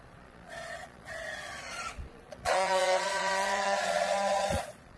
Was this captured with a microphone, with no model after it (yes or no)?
no